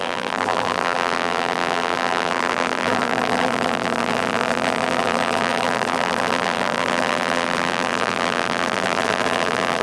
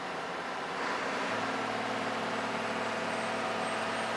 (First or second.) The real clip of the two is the second